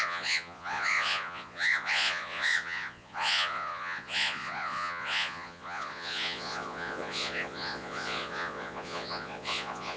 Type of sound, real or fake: fake